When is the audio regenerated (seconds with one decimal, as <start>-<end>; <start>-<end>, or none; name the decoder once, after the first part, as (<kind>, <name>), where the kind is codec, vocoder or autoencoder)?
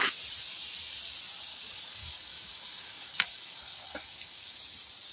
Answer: 1.5-4.6 (codec, DAC)